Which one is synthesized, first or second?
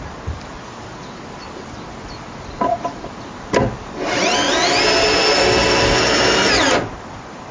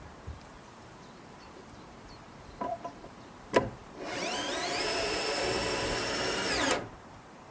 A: second